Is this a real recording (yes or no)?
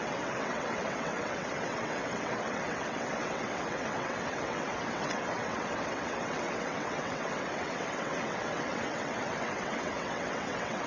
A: no